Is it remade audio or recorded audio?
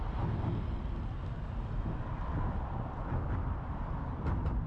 recorded